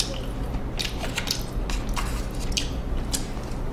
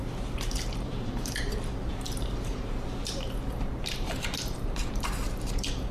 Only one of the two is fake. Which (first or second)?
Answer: second